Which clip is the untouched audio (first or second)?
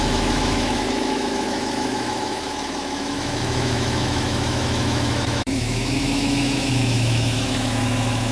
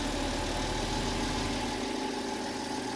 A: second